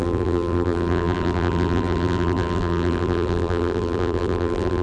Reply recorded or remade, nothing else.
remade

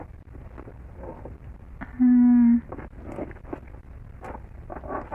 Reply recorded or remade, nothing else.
recorded